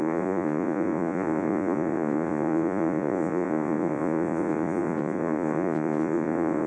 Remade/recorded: remade